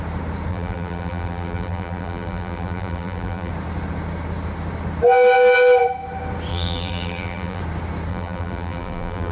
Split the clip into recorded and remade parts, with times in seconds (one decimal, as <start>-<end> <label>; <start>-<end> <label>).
0.0-0.5 recorded; 0.5-3.5 remade; 3.5-6.5 recorded; 6.5-7.6 remade; 7.6-8.1 recorded; 8.1-9.3 remade